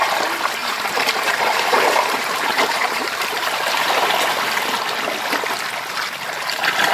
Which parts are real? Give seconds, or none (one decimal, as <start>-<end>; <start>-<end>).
0.0-0.6; 3.9-6.9